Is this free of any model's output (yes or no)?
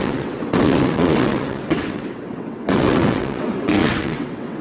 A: no